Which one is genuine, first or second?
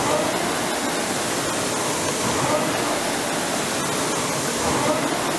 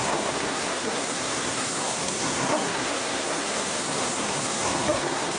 first